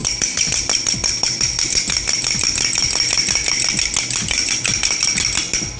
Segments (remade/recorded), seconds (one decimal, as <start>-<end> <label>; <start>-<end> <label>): 0.0-3.5 remade; 3.5-4.2 recorded; 4.2-5.2 remade; 5.2-5.8 recorded